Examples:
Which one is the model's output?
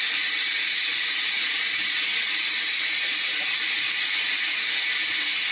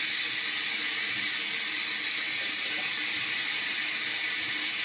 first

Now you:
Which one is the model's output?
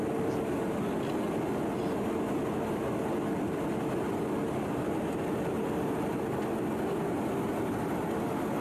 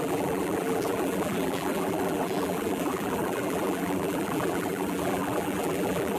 second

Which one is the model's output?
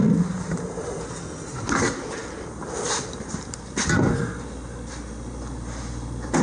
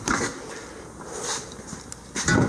first